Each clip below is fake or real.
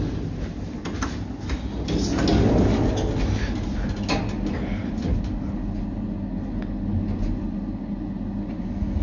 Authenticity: real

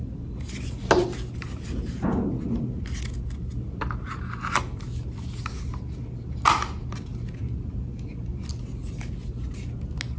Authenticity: real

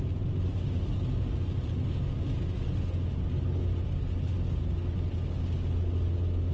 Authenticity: real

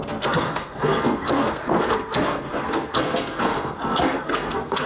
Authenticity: fake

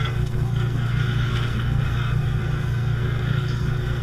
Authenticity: fake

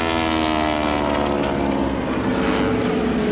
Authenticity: real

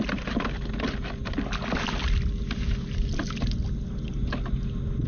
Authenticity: real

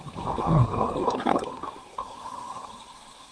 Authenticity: fake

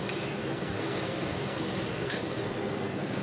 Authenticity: fake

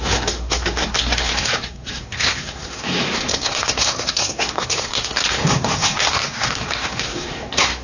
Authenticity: fake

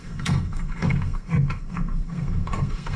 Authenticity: fake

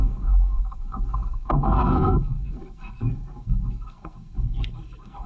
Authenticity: fake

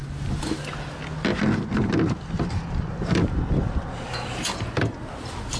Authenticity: real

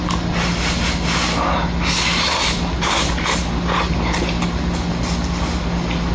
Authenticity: real